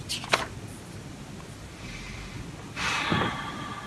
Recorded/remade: recorded